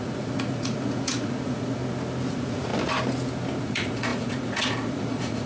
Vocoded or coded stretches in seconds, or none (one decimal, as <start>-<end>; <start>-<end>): 0.0-1.8; 2.3-2.7; 3.6-5.5